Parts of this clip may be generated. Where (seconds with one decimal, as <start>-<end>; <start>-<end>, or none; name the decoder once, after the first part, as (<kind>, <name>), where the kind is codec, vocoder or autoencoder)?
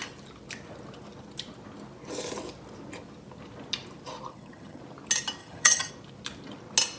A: 4.3-4.8 (vocoder, HiFi-GAN); 5.4-5.9